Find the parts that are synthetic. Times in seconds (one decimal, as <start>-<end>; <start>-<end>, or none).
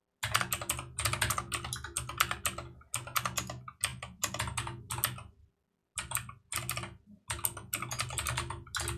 none